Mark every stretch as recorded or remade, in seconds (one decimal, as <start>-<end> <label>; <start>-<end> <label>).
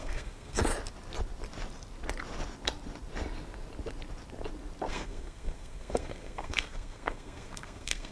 0.0-0.7 remade; 0.7-4.9 recorded; 4.9-8.1 remade